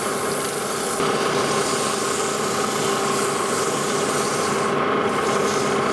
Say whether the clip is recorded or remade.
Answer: recorded